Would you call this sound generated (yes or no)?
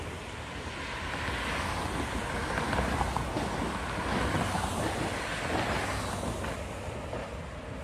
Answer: no